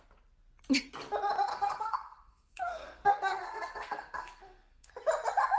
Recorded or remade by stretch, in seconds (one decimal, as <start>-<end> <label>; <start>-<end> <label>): 0.0-1.5 recorded; 1.5-4.9 remade; 4.9-5.6 recorded

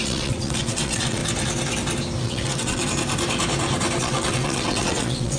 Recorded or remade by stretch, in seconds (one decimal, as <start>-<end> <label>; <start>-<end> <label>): 0.0-1.2 remade; 1.2-2.2 recorded; 2.2-2.8 remade; 2.8-4.0 recorded; 4.0-5.4 remade